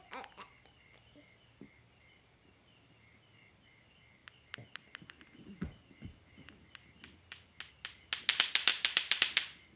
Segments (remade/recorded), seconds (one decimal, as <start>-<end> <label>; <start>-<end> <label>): 0.0-9.8 recorded